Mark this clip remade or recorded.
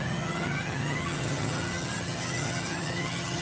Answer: remade